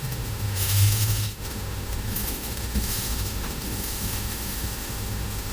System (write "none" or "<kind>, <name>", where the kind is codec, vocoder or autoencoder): autoencoder, DAC-VAE